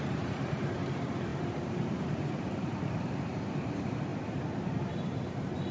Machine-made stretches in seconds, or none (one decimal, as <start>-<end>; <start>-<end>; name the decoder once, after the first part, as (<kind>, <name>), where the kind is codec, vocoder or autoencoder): 0.0-4.1 (vocoder, BigVGAN v2); 4.8-5.7